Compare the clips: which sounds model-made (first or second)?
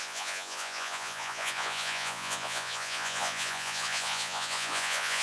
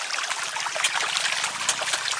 first